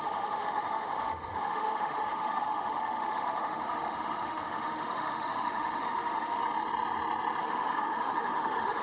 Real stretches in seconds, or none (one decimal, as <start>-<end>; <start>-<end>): 6.4-7.4